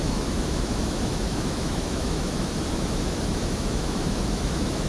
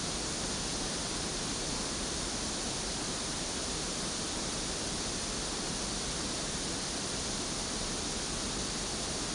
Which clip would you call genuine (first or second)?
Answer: second